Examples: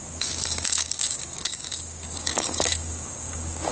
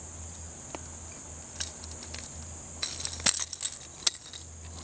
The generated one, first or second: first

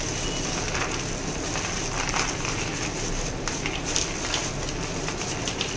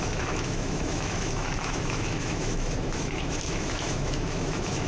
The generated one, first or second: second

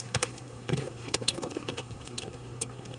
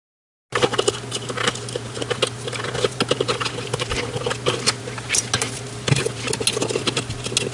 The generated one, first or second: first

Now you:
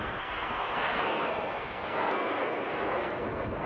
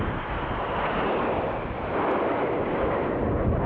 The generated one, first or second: first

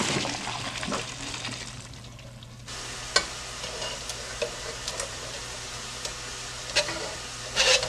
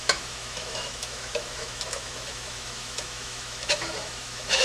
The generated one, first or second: second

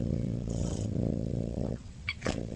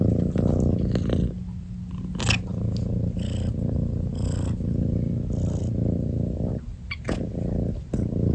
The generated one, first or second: first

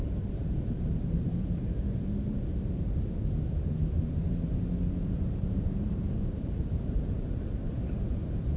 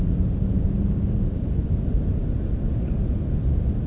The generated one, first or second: first